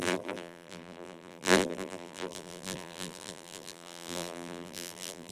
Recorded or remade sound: remade